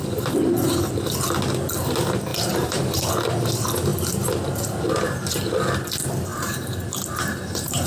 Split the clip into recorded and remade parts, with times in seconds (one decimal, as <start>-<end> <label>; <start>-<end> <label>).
0.0-2.3 recorded; 2.3-3.1 remade; 3.1-6.3 recorded; 6.3-7.9 remade